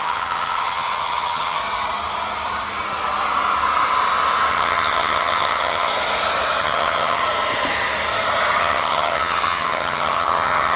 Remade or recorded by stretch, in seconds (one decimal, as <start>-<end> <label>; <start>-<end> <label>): 0.0-1.6 remade; 1.6-4.5 recorded; 4.5-5.9 remade; 5.9-6.6 recorded; 6.6-7.2 remade; 7.2-8.6 recorded; 8.6-10.8 remade